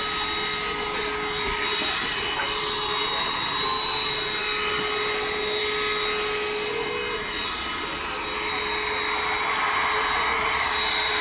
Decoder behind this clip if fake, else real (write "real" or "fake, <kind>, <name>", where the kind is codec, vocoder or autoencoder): real